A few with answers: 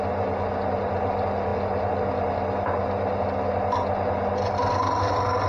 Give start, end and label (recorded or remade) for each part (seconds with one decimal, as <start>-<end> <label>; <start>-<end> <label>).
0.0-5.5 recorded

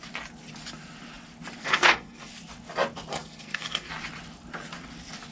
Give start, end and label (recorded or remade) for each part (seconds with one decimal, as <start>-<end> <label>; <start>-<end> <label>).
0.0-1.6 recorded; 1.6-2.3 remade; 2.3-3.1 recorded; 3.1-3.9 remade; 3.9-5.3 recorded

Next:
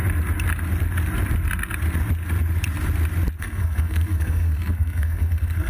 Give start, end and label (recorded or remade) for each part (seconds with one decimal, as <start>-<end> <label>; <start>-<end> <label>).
0.0-3.4 recorded; 3.4-5.7 remade

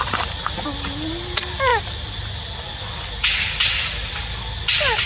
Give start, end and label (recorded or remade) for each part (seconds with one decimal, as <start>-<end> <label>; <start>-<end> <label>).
0.0-5.1 recorded

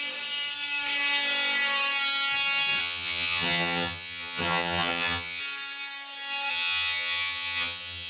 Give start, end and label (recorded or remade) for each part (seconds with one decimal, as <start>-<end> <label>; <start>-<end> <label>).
0.0-2.8 recorded; 2.8-5.4 remade; 5.4-6.5 recorded; 6.5-8.1 remade